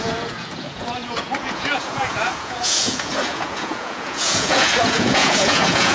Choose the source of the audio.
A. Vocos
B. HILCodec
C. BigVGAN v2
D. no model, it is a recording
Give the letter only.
A